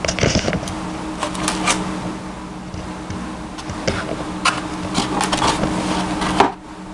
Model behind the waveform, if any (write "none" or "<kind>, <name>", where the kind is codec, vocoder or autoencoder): none